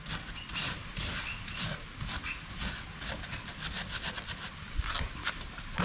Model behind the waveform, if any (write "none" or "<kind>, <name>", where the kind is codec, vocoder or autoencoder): none